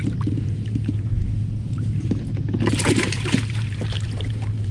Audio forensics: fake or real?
fake